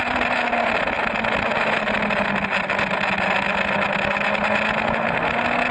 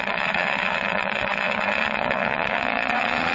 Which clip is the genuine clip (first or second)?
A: first